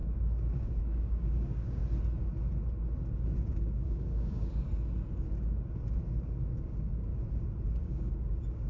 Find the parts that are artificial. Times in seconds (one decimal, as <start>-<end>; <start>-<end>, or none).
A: 0.0-1.8; 3.5-4.7; 6.2-7.1; 7.8-8.7